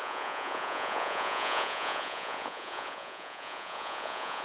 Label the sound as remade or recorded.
remade